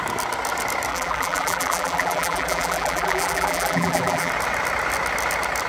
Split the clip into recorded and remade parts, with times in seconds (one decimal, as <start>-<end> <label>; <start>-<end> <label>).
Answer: 0.0-0.9 recorded; 0.9-4.3 remade; 4.3-5.7 recorded